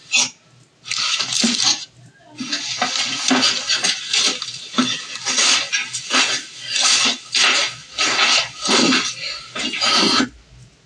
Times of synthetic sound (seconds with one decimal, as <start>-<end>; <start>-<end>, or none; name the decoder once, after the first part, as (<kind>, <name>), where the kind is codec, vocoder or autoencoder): none